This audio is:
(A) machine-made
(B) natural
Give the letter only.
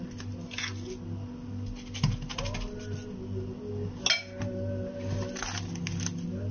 B